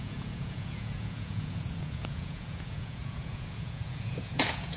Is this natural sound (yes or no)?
no